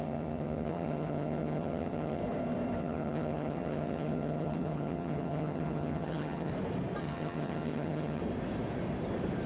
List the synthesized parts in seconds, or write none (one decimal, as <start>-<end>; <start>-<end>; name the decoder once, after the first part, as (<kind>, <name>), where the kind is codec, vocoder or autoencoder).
0.0-2.2 (vocoder, HiFi-GAN); 2.8-6.5; 7.0-8.2